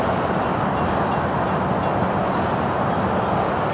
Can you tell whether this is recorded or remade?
recorded